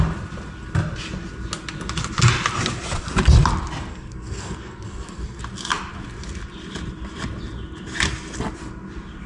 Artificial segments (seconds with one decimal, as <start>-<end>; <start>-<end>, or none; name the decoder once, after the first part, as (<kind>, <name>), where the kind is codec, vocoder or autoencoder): 3.9-5.4 (codec, SNAC)